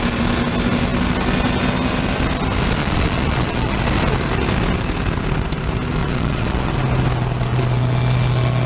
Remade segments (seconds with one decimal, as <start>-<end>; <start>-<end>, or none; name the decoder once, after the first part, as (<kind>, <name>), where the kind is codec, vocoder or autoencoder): 2.8-3.8 (vocoder, Vocos); 6.0-6.7